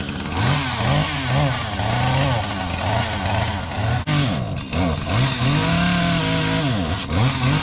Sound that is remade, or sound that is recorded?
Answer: recorded